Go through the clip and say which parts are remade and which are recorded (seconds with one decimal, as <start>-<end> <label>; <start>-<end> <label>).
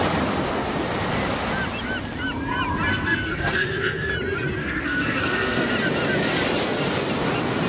0.0-2.9 recorded; 2.9-4.1 remade; 4.1-4.6 recorded; 4.6-5.7 remade; 5.7-7.7 recorded